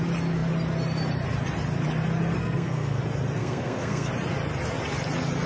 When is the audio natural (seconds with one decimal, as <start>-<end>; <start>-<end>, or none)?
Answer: 0.0-2.4; 3.0-3.4; 4.1-5.5

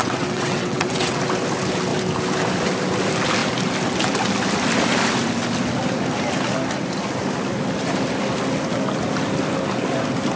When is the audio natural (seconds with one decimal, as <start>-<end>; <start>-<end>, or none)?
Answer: 1.2-10.4